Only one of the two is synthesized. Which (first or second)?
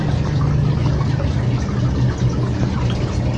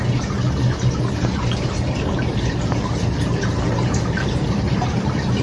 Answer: second